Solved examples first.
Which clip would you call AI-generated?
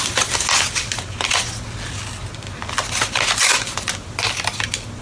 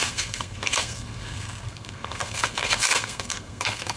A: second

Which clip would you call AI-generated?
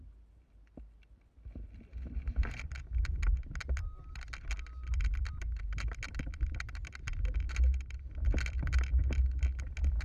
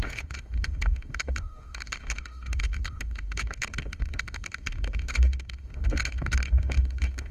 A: second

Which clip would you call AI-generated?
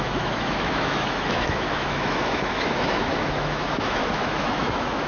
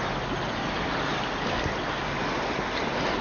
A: first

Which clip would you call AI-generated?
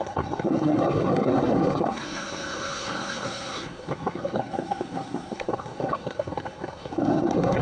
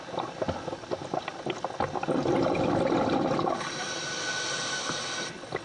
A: first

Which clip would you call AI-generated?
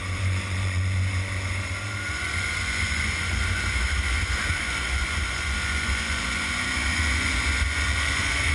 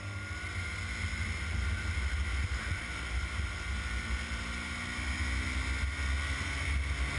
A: first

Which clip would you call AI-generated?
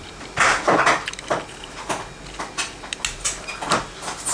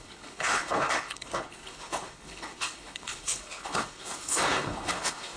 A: second